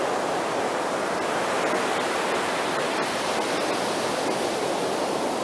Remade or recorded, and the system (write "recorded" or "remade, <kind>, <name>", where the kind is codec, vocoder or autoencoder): recorded